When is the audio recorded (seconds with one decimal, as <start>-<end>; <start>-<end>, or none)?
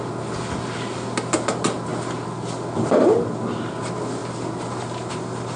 0.0-5.6